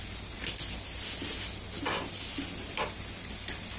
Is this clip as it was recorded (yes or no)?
yes